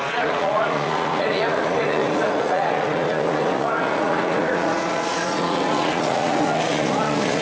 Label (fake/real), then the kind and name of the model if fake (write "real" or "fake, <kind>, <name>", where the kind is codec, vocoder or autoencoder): fake, vocoder, Vocos